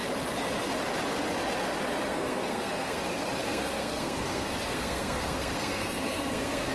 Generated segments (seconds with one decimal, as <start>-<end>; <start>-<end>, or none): 2.1-3.0; 3.4-6.7